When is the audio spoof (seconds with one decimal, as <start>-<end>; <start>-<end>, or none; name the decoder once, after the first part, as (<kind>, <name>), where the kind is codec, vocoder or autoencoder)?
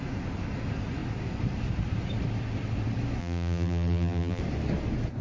3.2-4.4 (vocoder, BigVGAN v2)